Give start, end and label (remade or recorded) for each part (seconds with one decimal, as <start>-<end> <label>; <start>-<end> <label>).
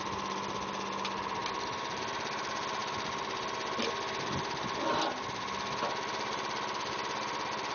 0.0-7.7 recorded